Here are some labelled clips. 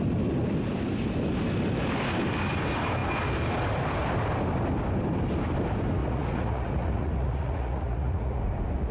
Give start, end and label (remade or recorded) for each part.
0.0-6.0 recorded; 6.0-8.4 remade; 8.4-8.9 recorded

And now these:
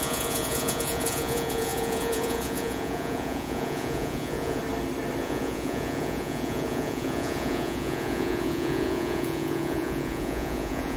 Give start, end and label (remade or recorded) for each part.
0.0-4.6 remade; 4.6-5.2 recorded; 5.2-11.0 remade

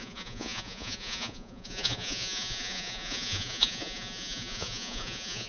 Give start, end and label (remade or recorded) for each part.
0.0-5.5 remade